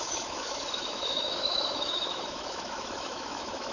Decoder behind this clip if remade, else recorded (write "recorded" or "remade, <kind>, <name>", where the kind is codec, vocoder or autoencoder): remade, autoencoder, DAC-VAE